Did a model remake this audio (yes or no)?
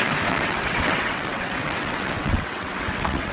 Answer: yes